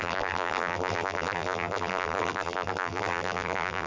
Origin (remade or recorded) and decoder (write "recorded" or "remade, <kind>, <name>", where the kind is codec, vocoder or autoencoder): remade, vocoder, BigVGAN v2